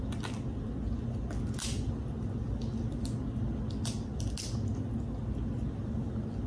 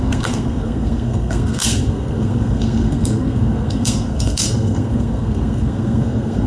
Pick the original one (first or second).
first